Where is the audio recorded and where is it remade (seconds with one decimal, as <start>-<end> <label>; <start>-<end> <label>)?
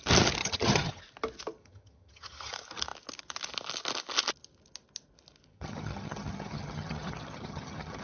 0.0-0.4 recorded; 0.4-1.0 remade; 1.0-1.6 recorded; 1.6-2.5 remade; 2.5-5.5 recorded; 5.5-8.0 remade